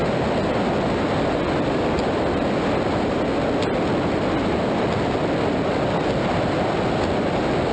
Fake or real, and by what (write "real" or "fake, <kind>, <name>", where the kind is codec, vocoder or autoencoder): real